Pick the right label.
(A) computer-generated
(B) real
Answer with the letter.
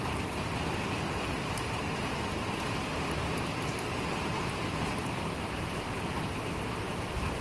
B